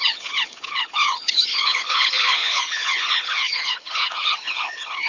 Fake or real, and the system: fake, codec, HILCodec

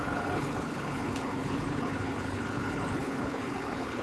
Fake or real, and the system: fake, codec, HILCodec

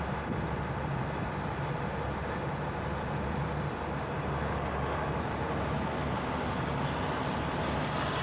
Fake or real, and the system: real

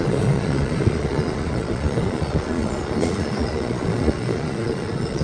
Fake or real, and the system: fake, vocoder, Vocos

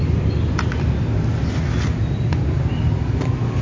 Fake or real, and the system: real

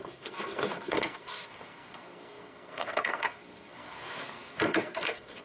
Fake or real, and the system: fake, codec, SNAC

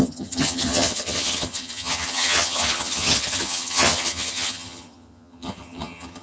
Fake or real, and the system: fake, vocoder, HiFi-GAN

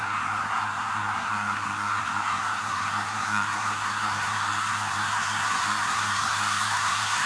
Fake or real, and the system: fake, codec, SNAC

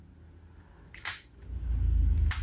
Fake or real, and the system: real